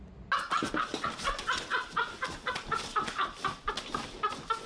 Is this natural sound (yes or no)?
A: yes